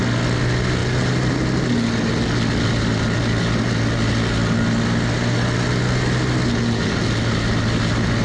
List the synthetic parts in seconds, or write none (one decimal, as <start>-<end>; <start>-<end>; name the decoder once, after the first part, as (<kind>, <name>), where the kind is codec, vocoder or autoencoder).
none

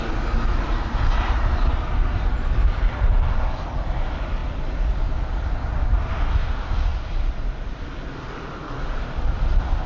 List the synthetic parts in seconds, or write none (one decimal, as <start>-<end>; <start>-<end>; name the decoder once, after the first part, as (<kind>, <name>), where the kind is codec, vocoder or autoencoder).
none